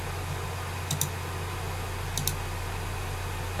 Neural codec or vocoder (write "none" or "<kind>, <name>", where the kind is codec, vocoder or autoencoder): none